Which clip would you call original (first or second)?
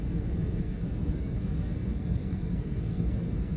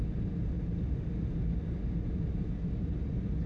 second